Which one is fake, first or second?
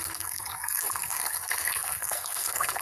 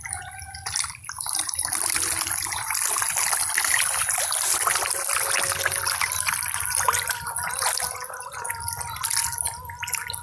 first